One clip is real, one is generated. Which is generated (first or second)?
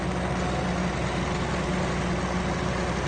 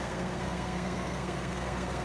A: second